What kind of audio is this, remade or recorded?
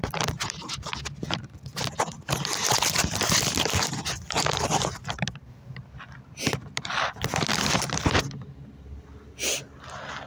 recorded